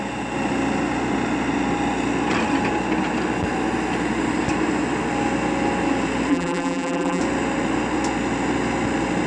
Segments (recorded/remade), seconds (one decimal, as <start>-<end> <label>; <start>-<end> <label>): 0.0-6.3 recorded; 6.3-7.2 remade; 7.2-9.3 recorded